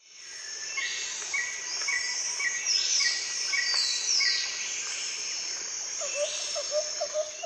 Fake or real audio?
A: fake